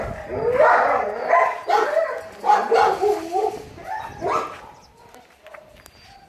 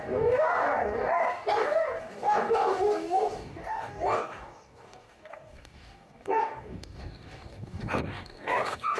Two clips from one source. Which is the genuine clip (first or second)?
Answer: first